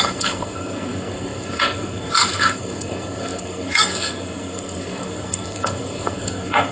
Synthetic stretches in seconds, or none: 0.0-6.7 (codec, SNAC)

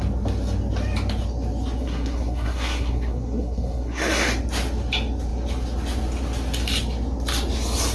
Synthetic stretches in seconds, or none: 1.8-4.3 (codec, SNAC)

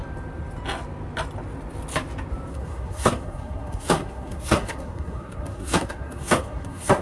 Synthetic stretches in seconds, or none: 2.5-7.0 (codec, SNAC)

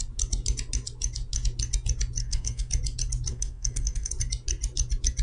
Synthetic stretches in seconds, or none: 2.2-2.7 (codec, SNAC); 3.3-4.1

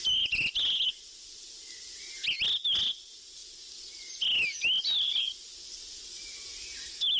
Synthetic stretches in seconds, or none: none